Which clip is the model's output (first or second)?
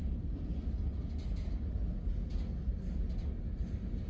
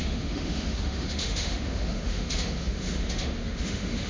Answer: second